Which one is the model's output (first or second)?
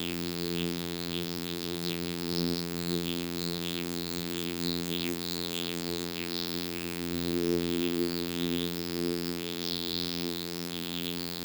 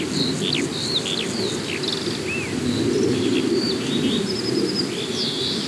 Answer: first